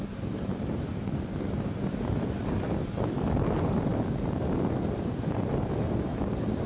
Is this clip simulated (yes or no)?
no